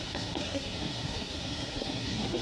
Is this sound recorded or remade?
remade